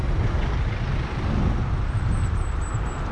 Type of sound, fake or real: real